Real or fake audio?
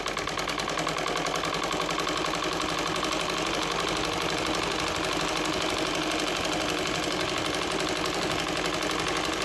real